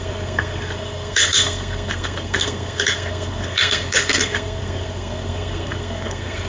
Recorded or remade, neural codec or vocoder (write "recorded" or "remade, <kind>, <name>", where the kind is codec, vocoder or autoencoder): remade, codec, SNAC